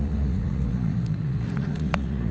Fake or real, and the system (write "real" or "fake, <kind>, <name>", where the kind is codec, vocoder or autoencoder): fake, vocoder, Vocos